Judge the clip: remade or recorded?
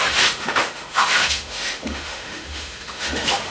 remade